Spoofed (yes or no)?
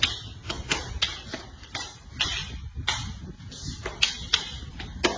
no